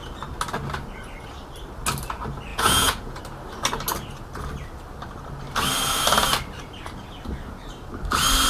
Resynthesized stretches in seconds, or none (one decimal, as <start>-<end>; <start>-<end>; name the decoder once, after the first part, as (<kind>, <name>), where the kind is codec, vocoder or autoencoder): 2.5-3.2 (vocoder, Vocos)